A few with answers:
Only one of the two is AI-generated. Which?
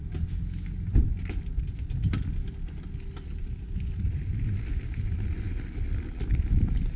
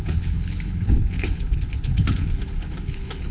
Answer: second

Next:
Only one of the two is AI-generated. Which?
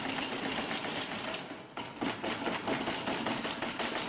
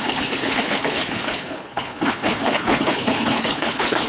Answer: second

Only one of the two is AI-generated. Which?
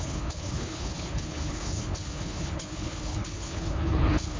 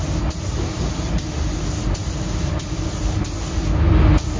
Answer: first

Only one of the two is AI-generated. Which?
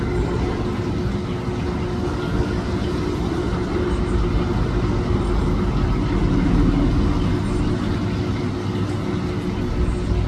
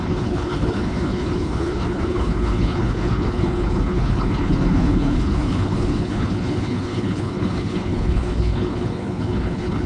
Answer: second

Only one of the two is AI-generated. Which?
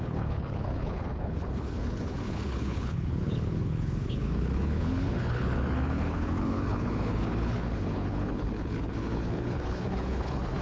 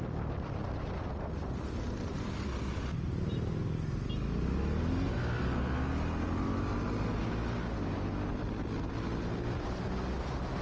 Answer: first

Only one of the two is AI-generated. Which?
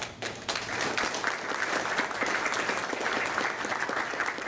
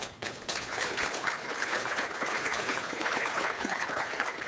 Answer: second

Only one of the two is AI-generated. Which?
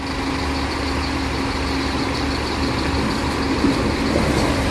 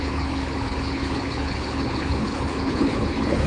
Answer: second